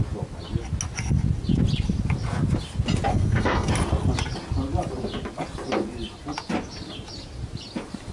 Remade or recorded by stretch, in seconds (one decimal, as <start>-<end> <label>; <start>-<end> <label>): 0.0-3.1 recorded; 3.1-3.7 remade; 3.7-8.1 recorded